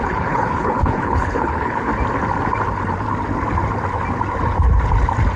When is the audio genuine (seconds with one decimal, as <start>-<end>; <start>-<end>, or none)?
1.9-5.4